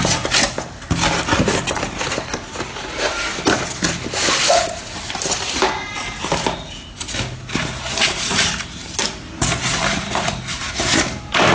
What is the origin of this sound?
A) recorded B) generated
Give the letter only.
A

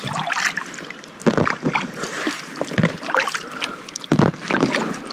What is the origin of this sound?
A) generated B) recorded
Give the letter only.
A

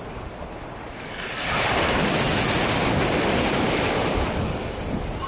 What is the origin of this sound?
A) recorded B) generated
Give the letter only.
A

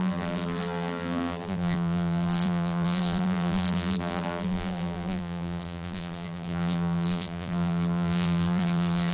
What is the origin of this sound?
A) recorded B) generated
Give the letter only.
B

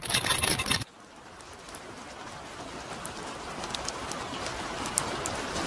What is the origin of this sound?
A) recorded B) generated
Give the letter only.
A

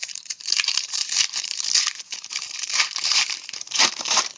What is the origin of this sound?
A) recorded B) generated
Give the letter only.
B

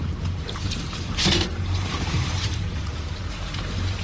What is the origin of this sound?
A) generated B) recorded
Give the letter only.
A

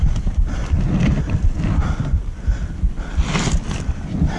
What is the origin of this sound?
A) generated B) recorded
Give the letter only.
A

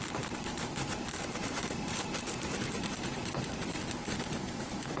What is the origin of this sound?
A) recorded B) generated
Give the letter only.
B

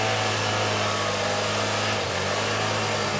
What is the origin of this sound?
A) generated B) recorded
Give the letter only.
B